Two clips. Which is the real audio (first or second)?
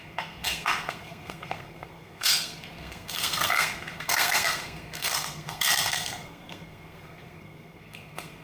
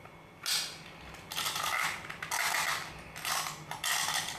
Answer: second